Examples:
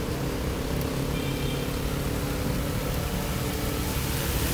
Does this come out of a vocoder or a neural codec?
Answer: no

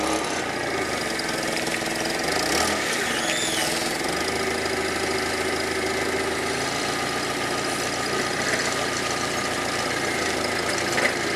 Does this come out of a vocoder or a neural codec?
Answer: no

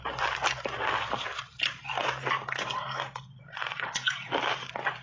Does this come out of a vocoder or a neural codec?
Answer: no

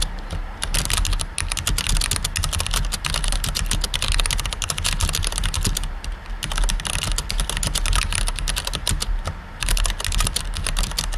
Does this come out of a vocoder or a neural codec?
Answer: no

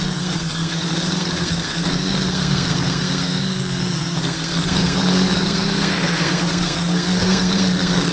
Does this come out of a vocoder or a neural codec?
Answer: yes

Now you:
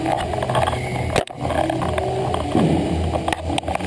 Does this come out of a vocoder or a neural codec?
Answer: no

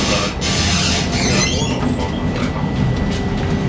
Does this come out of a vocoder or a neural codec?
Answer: no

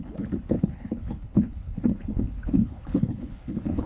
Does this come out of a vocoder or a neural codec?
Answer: yes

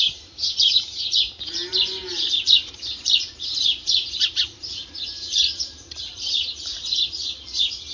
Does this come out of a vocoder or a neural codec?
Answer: yes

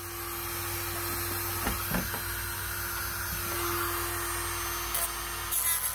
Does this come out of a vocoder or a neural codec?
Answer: no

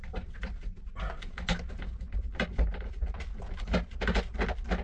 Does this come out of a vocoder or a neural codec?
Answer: no